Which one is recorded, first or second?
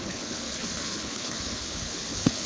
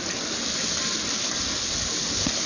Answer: second